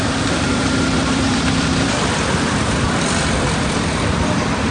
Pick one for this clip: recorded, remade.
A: remade